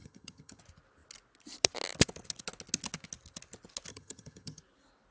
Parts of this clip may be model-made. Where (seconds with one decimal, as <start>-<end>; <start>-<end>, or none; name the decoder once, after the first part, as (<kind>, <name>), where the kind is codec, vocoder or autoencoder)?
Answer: 0.0-0.6 (vocoder, HiFi-GAN); 3.9-4.6